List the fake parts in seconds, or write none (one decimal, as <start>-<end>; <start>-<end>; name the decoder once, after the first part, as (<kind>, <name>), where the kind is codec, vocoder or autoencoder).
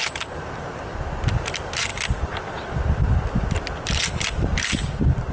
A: none